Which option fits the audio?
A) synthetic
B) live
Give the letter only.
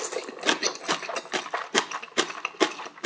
B